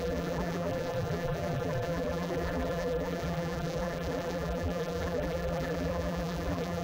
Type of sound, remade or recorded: remade